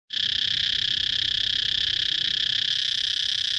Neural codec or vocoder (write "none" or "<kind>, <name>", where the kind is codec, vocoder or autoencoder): none